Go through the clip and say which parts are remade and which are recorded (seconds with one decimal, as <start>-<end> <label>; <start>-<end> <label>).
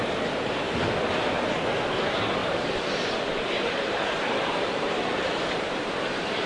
0.0-2.4 recorded; 2.4-6.5 remade